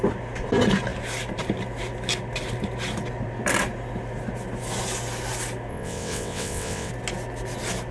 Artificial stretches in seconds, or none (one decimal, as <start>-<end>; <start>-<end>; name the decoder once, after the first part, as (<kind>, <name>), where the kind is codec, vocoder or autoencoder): 5.7-6.9 (vocoder, WaveNeXt)